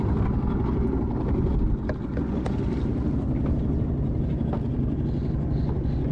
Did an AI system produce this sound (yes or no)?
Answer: no